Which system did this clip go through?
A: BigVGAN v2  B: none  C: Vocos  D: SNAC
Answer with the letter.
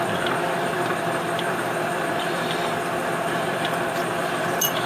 A